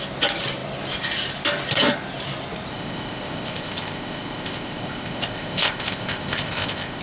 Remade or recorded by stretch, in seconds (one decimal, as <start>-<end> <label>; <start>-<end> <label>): 0.0-2.7 recorded; 2.7-7.0 remade